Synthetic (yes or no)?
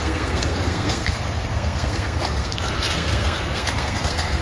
yes